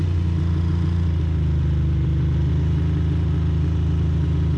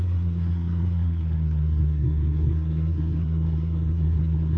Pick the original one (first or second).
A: first